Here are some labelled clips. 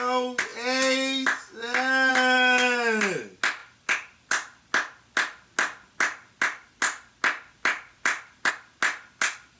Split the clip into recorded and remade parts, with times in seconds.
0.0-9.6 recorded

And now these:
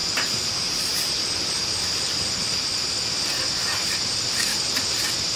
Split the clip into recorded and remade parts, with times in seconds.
0.0-2.4 remade; 2.4-4.5 recorded; 4.5-5.4 remade

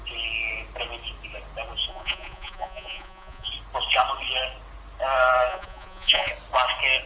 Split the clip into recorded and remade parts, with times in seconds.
0.0-1.9 recorded; 1.9-3.5 remade; 3.5-5.5 recorded; 5.5-6.3 remade; 6.3-7.1 recorded

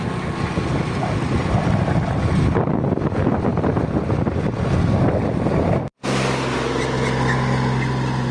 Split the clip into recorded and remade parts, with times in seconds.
0.0-8.3 recorded